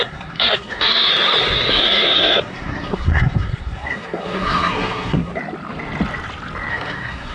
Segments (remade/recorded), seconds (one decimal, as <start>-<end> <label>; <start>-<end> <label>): 0.0-1.1 remade; 1.1-1.7 recorded; 1.7-5.3 remade; 5.3-6.7 recorded; 6.7-7.3 remade